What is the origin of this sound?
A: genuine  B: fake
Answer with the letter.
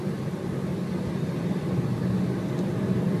A